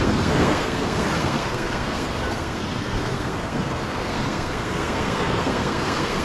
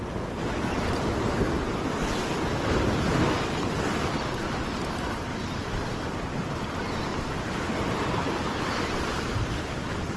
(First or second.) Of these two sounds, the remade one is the first